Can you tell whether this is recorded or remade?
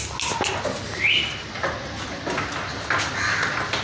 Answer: recorded